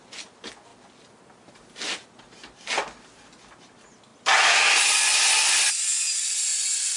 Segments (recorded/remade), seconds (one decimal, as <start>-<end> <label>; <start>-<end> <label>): 0.0-7.0 recorded